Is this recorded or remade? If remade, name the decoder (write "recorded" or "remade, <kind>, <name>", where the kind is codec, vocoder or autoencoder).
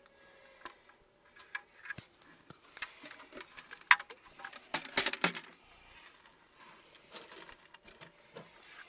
recorded